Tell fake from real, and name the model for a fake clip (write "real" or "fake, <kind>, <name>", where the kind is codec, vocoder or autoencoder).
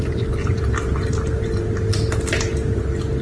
real